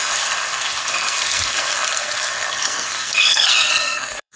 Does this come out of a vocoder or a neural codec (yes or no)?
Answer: yes